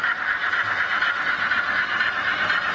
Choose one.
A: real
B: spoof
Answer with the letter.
A